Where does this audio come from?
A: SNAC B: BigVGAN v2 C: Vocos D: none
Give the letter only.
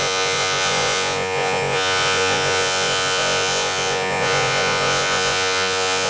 C